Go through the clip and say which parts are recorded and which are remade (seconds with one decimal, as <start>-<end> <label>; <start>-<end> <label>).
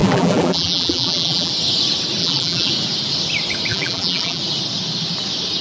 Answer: 0.0-1.5 remade; 1.5-2.2 recorded; 2.2-2.7 remade; 2.7-3.7 recorded; 3.7-4.4 remade; 4.4-5.6 recorded